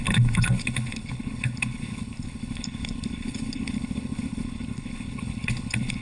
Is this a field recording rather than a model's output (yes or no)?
no